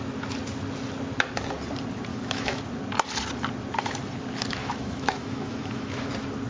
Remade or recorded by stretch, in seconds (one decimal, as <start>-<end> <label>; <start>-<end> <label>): 0.0-2.1 recorded; 2.1-2.6 remade; 2.6-4.6 recorded; 4.6-6.1 remade; 6.1-6.5 recorded